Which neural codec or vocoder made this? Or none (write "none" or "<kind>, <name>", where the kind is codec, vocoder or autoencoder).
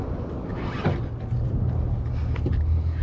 none